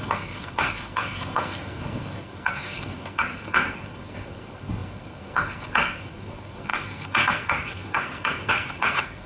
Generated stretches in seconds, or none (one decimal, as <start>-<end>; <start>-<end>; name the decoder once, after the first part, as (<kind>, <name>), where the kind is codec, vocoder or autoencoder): 0.0-9.3 (codec, SNAC)